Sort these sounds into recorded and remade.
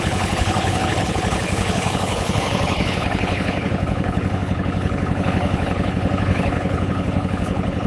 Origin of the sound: remade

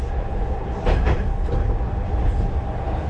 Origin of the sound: recorded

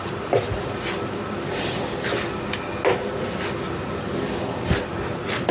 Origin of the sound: recorded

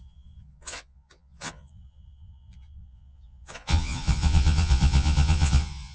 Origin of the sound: remade